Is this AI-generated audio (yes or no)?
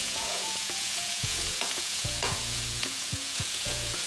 yes